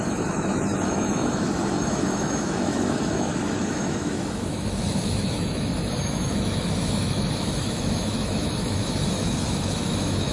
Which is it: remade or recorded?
remade